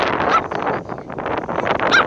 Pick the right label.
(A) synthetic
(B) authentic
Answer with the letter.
B